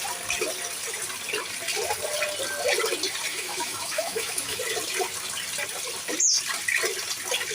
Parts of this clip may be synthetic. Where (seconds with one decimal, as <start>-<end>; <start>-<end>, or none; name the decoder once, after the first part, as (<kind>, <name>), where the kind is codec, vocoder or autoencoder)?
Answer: 3.3-4.6 (autoencoder, DAC-VAE)